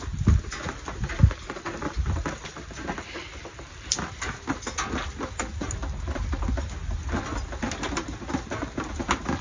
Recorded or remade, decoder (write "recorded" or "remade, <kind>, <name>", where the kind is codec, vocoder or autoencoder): recorded